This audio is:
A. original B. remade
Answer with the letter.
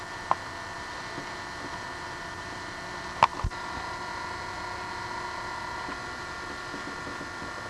A